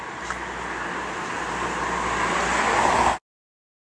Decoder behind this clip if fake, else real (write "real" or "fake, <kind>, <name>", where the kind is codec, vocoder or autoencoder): real